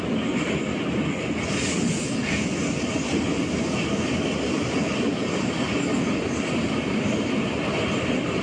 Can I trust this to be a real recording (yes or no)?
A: yes